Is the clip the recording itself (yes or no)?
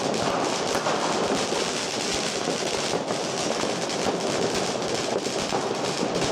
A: yes